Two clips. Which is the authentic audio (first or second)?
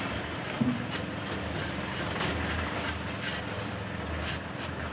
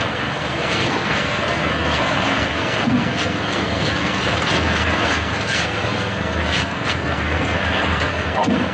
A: first